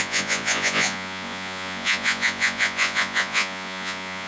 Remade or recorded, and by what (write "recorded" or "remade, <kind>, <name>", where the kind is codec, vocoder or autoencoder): remade, vocoder, Vocos